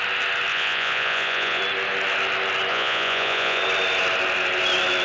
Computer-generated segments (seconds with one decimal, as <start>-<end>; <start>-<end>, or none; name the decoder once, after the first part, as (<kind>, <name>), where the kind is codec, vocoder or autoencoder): 0.5-1.6 (vocoder, Vocos); 2.7-3.6